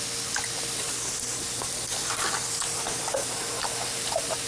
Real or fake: real